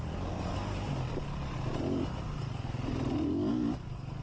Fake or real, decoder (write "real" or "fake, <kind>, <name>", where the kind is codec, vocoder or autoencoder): real